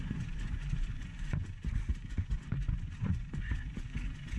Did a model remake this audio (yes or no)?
yes